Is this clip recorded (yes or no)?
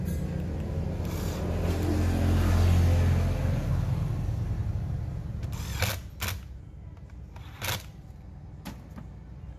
yes